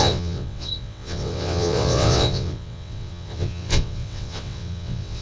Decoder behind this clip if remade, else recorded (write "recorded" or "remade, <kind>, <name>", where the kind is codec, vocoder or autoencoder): remade, vocoder, WaveNeXt